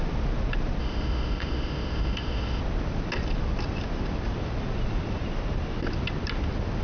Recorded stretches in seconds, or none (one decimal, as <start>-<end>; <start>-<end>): 0.0-0.8; 2.6-6.8